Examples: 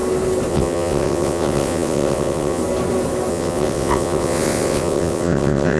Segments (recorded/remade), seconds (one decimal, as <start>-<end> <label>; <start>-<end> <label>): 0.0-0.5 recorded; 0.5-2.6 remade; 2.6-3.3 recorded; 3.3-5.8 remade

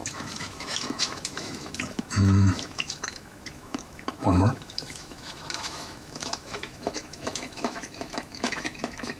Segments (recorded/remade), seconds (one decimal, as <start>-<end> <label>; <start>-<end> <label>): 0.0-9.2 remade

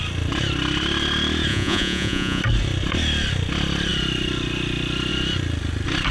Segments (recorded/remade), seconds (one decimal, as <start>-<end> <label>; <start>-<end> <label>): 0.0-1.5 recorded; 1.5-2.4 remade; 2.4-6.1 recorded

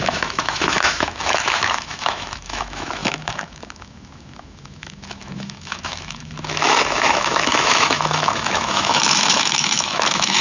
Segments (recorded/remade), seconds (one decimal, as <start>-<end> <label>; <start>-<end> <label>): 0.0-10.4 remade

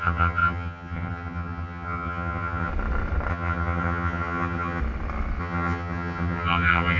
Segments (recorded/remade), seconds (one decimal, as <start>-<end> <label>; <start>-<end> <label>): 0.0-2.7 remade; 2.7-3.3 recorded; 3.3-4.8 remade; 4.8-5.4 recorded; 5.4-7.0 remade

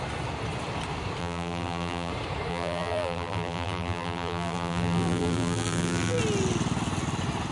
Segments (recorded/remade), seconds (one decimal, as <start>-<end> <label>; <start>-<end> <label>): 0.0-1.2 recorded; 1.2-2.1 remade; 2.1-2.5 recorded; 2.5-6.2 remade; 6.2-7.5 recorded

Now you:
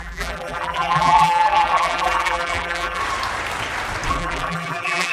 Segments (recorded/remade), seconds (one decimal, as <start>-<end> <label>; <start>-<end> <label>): 0.0-3.0 remade; 3.0-4.1 recorded; 4.1-5.1 remade

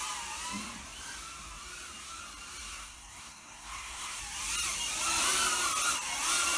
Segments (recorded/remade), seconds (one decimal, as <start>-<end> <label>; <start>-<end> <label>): 0.0-2.7 recorded; 2.7-4.2 remade; 4.2-6.6 recorded